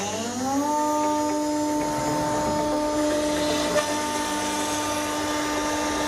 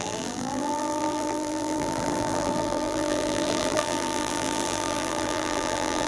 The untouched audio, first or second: first